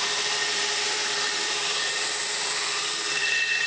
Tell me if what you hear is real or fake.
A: fake